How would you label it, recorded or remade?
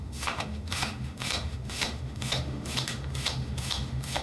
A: remade